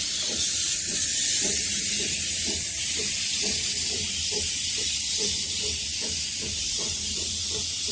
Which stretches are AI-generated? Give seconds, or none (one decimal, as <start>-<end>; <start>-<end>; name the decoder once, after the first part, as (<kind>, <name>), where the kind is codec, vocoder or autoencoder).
0.0-7.9 (vocoder, BigVGAN v2)